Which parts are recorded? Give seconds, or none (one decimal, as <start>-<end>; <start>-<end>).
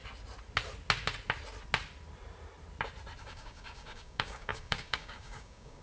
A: 0.0-3.2